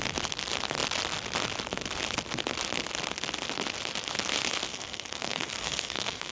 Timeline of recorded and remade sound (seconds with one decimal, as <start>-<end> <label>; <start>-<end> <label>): 0.0-4.7 recorded; 4.7-6.3 remade